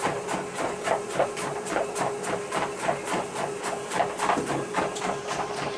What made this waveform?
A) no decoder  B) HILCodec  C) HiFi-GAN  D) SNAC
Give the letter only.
A